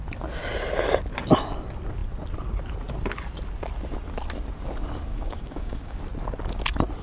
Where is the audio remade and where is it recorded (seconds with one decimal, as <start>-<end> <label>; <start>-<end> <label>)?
0.0-5.1 recorded; 5.1-6.0 remade; 6.0-7.0 recorded